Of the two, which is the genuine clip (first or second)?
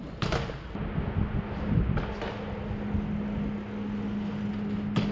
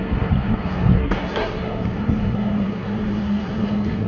first